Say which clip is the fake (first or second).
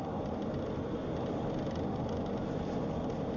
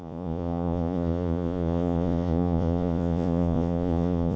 second